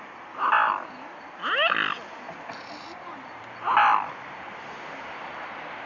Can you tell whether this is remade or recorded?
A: recorded